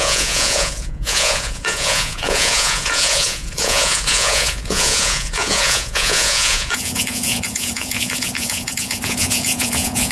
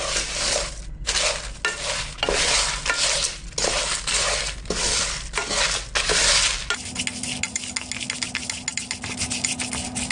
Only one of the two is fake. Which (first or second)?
first